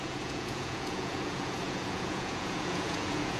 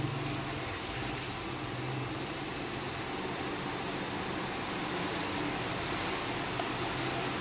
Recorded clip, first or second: second